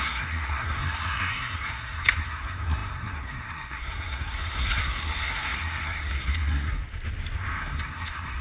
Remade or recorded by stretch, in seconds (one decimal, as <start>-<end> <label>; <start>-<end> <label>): 0.0-6.8 remade; 6.8-7.6 recorded; 7.6-8.4 remade